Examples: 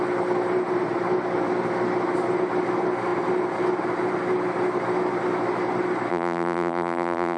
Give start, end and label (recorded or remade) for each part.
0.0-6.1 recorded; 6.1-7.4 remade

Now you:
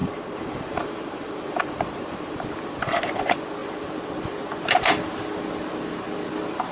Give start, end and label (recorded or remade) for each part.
0.0-2.3 remade; 2.3-6.7 recorded

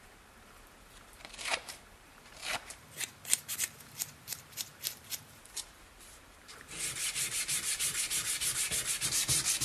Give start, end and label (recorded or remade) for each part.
0.0-9.6 remade

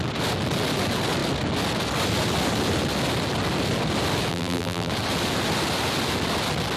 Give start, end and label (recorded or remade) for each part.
0.0-4.3 recorded; 4.3-4.9 remade; 4.9-6.8 recorded

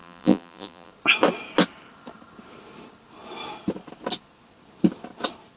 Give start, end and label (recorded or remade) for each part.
0.0-0.9 remade; 0.9-5.6 recorded